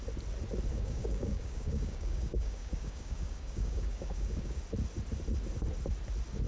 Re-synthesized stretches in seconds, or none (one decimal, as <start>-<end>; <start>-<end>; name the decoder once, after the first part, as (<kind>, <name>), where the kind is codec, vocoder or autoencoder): 0.7-4.6 (codec, DAC)